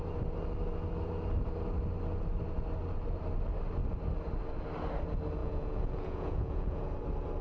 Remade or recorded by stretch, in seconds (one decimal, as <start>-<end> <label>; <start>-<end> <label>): 0.0-5.4 recorded; 5.4-6.8 remade; 6.8-7.4 recorded